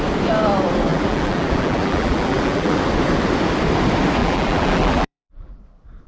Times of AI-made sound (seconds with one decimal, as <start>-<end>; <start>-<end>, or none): 0.9-2.8; 4.2-5.6